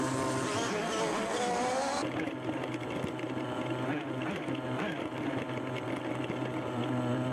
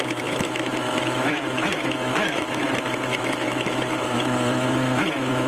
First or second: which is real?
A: first